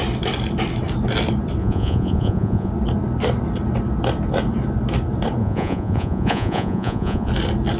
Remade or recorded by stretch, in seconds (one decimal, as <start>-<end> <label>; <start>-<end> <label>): 0.0-1.6 recorded; 1.6-2.7 remade; 2.7-5.4 recorded; 5.4-7.3 remade; 7.3-7.8 recorded